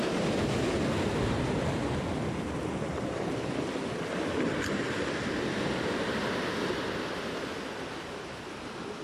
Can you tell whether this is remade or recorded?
recorded